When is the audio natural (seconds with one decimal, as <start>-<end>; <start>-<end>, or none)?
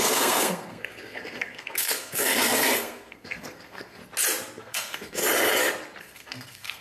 4.0-4.6; 5.2-6.0